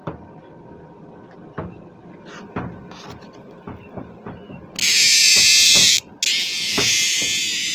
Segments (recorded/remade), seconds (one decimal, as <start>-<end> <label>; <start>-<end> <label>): 0.0-7.7 recorded